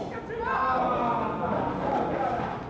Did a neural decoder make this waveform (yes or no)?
no